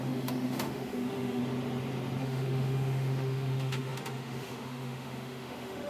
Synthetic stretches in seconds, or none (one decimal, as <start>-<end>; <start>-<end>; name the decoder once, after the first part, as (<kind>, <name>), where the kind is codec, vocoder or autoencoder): 0.0-1.4 (autoencoder, DAC-VAE); 2.2-5.9